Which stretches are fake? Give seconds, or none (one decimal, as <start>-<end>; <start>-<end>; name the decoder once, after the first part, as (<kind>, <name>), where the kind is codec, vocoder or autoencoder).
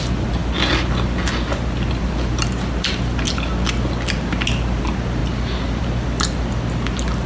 none